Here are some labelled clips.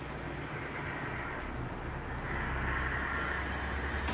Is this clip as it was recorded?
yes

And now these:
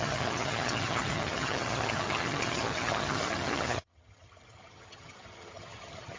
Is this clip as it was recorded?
no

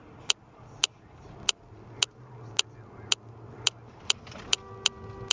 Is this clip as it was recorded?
yes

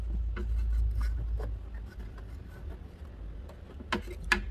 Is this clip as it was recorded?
yes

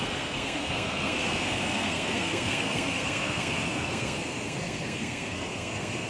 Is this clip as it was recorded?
no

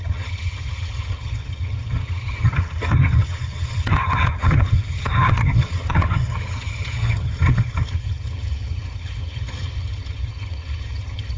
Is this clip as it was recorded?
no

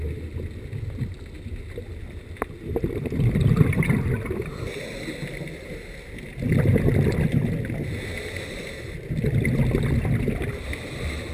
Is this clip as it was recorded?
yes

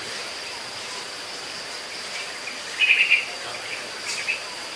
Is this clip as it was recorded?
no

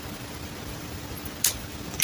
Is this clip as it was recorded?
yes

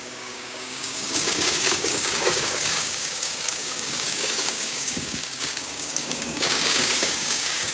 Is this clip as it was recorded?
no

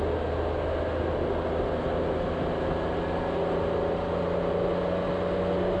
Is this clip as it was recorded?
yes